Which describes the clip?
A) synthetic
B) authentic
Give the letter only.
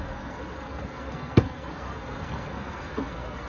A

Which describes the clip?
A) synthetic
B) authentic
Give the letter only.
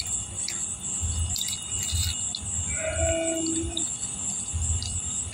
B